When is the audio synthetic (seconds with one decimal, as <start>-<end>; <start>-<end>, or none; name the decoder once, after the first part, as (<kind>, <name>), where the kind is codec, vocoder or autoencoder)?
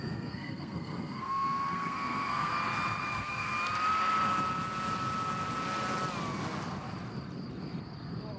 0.0-2.5 (codec, SNAC); 3.0-3.5